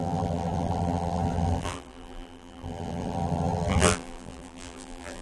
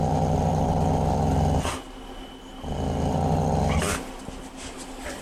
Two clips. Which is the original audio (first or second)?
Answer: second